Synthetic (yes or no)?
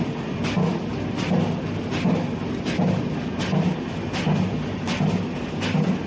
no